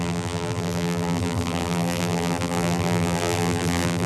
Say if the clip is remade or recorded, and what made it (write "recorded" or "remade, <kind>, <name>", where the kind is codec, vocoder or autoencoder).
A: remade, vocoder, BigVGAN v2